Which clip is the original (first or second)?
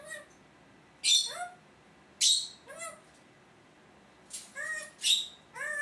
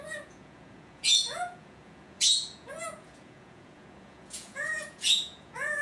first